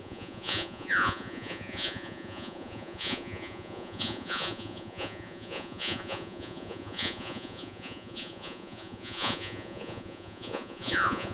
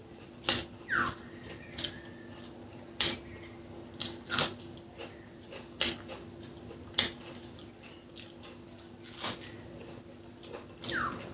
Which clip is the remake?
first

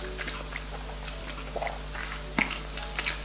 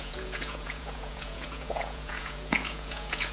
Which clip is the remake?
second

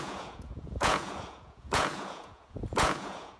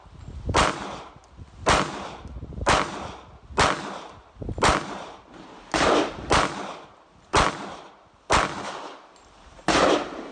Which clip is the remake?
first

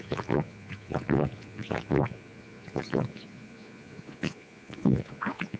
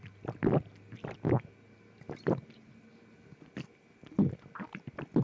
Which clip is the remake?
first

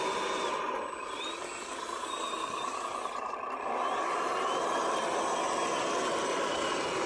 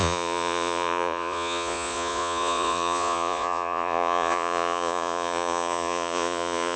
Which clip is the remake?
second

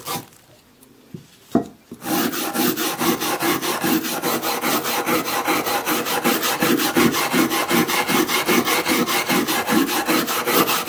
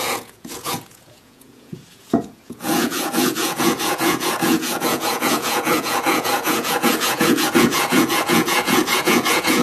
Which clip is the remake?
second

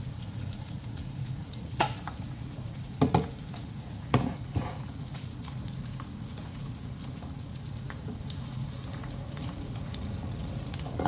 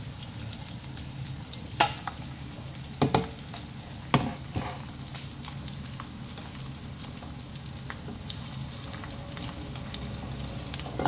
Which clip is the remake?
first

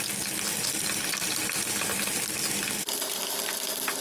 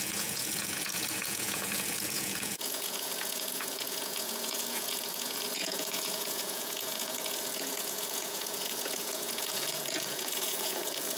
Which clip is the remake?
second